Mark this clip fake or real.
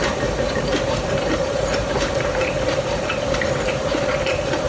fake